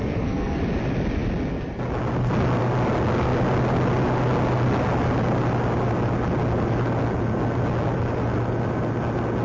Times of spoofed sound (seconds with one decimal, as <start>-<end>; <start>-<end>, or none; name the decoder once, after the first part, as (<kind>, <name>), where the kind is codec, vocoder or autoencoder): 0.0-0.6 (codec, SNAC)